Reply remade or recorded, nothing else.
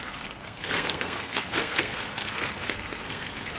remade